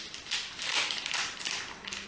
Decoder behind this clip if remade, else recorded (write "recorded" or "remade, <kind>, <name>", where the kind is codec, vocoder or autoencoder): recorded